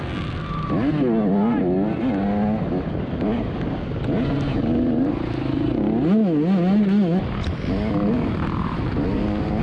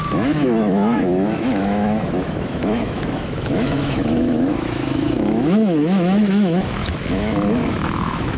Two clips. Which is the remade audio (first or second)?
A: second